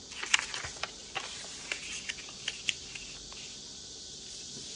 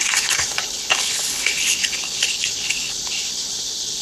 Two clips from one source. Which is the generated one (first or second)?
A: second